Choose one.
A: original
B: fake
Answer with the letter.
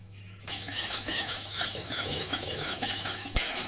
B